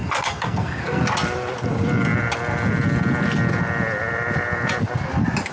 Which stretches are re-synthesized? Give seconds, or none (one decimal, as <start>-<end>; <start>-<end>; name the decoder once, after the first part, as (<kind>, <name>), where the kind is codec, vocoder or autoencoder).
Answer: 0.0-1.0 (codec, SNAC)